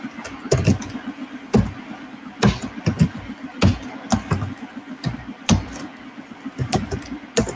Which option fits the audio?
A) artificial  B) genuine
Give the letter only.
B